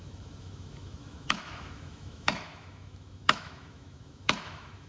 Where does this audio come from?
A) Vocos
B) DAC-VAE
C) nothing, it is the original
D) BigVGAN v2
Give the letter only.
B